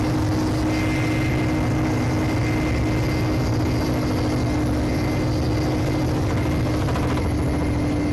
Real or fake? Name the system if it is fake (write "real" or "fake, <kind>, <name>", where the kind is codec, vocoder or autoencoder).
real